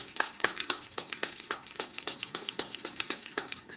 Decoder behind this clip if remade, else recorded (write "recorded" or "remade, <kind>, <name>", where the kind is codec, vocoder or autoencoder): remade, codec, SNAC